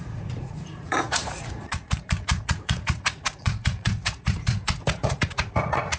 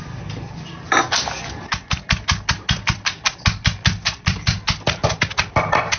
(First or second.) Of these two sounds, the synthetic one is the first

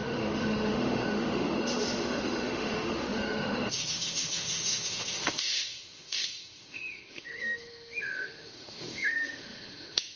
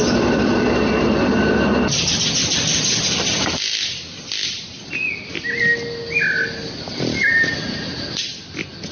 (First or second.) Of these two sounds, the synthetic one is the first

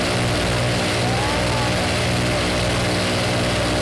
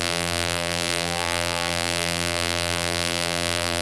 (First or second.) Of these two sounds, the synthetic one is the second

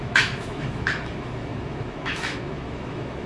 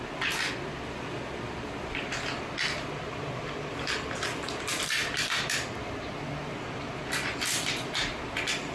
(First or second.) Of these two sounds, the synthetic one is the first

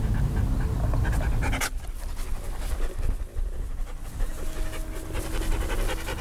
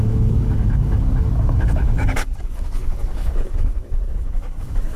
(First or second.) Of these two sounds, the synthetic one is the second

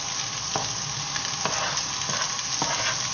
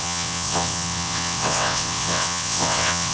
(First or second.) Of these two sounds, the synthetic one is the second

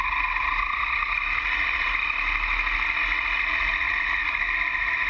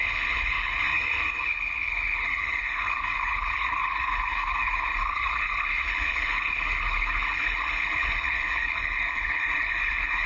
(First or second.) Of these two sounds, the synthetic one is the second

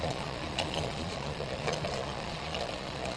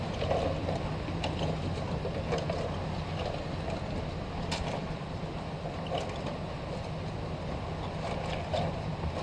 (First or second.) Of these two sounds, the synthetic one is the first